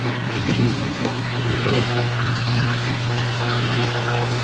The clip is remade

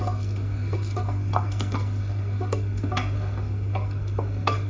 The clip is remade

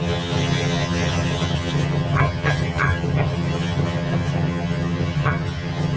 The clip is remade